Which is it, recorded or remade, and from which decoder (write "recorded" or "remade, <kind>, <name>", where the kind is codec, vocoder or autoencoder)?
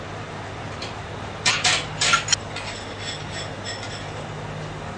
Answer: recorded